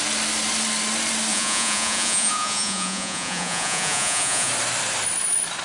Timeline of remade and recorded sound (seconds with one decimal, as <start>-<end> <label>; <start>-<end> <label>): 0.0-1.3 recorded; 1.3-4.5 remade; 4.5-5.6 recorded